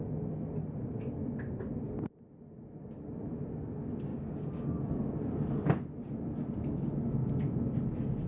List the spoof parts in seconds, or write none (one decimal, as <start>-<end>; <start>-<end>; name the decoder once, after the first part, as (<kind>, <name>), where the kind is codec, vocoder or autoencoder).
4.1-4.8 (codec, DAC)